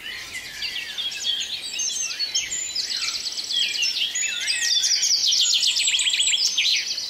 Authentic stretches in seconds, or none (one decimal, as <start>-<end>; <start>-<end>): 0.0-7.1